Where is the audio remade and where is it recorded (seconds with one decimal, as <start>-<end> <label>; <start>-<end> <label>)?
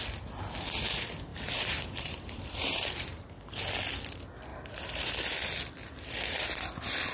0.0-1.3 recorded; 1.3-3.6 remade; 3.6-4.5 recorded; 4.5-5.1 remade; 5.1-7.1 recorded